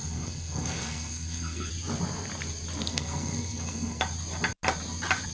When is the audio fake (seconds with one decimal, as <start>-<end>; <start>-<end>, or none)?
0.0-1.7; 2.9-4.0